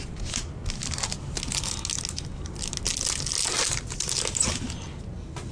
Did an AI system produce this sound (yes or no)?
no